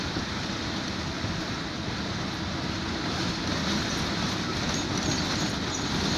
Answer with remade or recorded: recorded